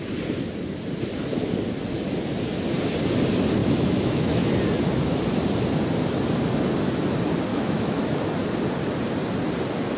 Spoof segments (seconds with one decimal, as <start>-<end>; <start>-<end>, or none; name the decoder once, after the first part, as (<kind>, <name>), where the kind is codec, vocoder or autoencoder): 3.6-4.5 (autoencoder, DAC-VAE); 7.5-8.3